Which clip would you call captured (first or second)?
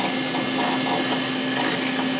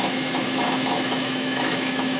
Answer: first